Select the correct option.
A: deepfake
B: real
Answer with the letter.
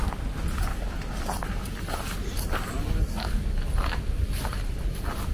B